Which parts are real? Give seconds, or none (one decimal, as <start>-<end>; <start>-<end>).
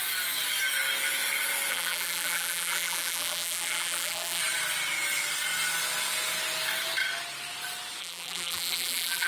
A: 0.0-1.7; 4.4-8.0